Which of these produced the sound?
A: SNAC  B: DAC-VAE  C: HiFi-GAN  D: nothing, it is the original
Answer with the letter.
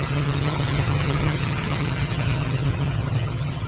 C